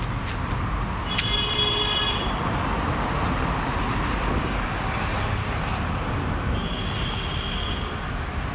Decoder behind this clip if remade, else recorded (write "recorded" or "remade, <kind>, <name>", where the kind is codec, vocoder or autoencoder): recorded